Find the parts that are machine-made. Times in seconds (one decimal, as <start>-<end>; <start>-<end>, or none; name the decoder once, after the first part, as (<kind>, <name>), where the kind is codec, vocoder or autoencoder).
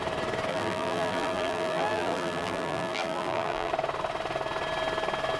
0.5-3.7 (vocoder, BigVGAN v2)